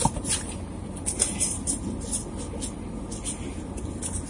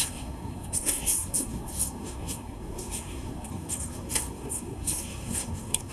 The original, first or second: first